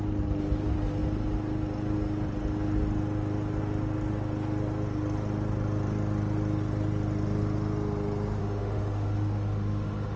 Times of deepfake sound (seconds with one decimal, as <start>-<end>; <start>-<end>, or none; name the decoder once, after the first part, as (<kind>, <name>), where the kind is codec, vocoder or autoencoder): 8.4-10.2 (autoencoder, DAC-VAE)